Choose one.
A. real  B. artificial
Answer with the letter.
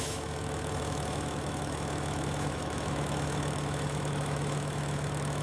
B